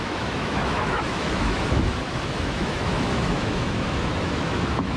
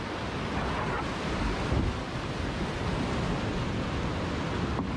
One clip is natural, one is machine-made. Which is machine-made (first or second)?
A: first